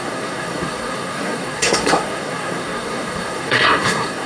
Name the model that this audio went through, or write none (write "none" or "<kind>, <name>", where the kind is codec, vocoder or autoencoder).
codec, SNAC